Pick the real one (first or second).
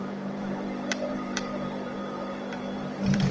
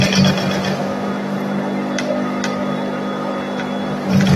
second